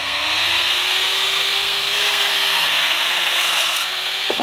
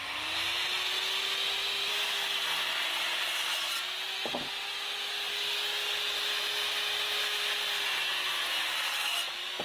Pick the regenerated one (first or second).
first